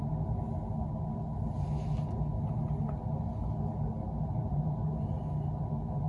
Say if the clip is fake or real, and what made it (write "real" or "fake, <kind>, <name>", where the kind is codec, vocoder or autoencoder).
real